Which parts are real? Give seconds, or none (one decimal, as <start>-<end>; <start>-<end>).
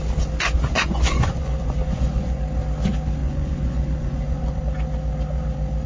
0.0-0.7; 2.4-3.2; 4.6-5.9